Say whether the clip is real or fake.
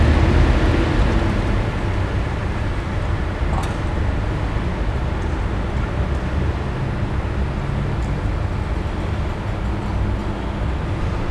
real